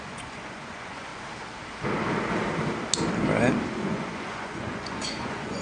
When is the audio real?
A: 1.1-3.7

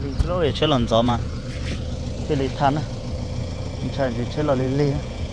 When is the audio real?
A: 0.0-0.5; 1.4-3.8

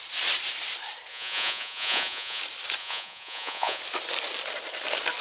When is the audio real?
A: 0.0-1.1; 2.4-2.8; 3.8-5.2

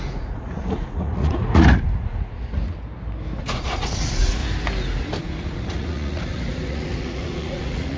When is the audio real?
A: 2.6-3.4; 4.4-5.2

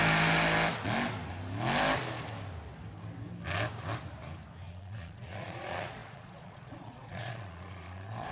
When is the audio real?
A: 0.0-4.7

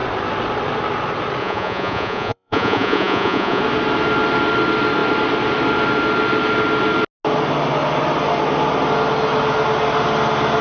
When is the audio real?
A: 0.0-1.4; 3.6-10.6

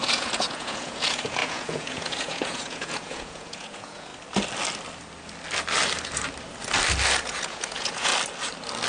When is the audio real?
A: 4.1-7.2; 8.1-8.9

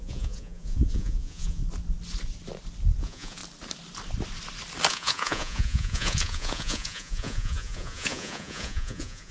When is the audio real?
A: 1.6-3.0; 3.4-4.9